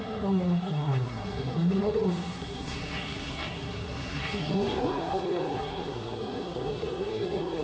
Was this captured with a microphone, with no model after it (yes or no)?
no